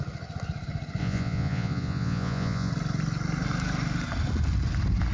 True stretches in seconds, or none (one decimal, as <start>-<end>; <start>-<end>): 0.0-1.0; 2.7-5.1